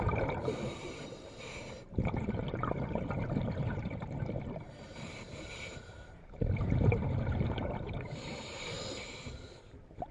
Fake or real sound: fake